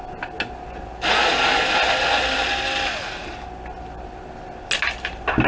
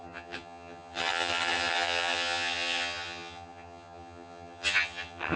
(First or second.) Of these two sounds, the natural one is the first